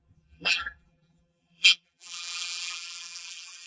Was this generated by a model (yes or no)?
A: yes